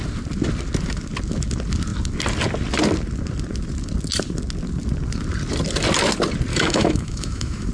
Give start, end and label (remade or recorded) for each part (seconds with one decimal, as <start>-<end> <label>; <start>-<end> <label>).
0.0-6.5 recorded; 6.5-7.7 remade